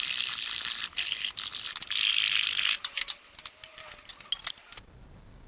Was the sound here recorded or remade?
recorded